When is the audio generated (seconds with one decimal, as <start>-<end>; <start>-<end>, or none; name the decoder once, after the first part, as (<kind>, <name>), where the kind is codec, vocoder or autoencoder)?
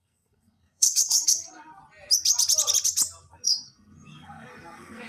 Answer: 0.0-1.8 (codec, SNAC); 3.3-5.1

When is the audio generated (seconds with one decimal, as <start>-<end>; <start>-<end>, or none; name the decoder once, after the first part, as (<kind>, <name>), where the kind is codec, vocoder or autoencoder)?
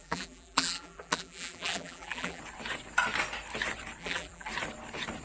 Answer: 0.0-2.4 (vocoder, BigVGAN v2); 4.0-4.5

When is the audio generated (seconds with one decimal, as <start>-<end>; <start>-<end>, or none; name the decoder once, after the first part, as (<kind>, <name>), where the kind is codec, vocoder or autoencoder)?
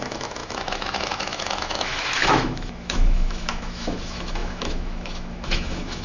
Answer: 0.0-6.0 (autoencoder, DAC-VAE)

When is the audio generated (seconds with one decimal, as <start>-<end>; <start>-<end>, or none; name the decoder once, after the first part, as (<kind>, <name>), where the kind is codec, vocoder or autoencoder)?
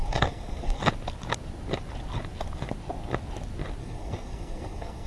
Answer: 0.0-0.8 (codec, SNAC); 3.8-5.1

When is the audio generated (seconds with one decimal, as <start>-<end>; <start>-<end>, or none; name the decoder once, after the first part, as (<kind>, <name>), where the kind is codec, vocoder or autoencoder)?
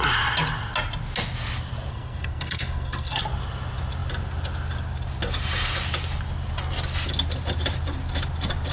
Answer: 1.9-3.2 (codec, SNAC)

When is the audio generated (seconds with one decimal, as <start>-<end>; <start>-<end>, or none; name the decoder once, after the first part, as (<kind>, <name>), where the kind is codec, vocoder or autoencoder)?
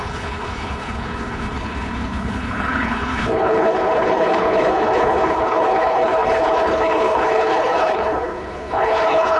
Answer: 0.0-9.4 (codec, HILCodec)